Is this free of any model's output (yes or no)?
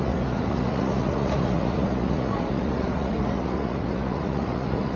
no